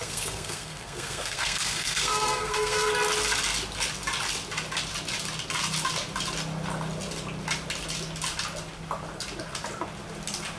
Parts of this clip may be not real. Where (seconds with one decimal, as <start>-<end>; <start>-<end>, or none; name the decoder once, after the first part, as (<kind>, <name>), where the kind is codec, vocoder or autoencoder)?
0.0-2.9 (codec, SNAC)